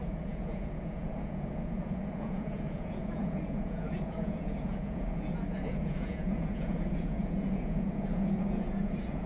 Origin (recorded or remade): remade